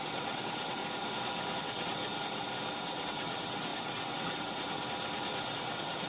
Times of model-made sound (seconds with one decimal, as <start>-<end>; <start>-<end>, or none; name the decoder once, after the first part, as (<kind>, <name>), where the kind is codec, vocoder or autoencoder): 0.0-0.8 (vocoder, WaveNeXt); 1.6-2.0; 2.8-4.8; 5.4-6.1